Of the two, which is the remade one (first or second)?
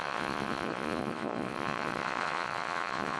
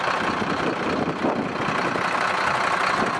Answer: first